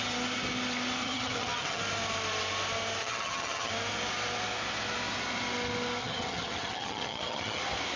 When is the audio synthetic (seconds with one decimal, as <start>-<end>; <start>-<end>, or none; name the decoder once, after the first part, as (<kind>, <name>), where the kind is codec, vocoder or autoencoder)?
1.0-1.8 (vocoder, HiFi-GAN); 3.0-3.7; 6.0-7.6

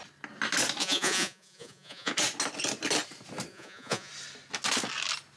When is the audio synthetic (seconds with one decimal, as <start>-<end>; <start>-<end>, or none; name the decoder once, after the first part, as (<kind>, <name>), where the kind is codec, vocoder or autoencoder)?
0.8-2.1 (vocoder, Vocos); 3.5-4.1

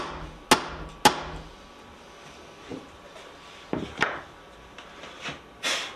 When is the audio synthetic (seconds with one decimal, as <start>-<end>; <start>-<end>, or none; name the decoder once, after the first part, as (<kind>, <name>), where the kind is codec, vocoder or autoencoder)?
2.7-4.4 (vocoder, BigVGAN v2)